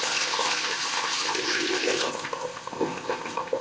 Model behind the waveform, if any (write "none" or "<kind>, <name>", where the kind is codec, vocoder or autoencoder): codec, ZipCodec